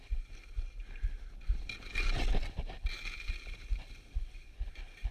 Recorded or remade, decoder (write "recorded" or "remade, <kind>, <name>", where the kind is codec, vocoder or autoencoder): recorded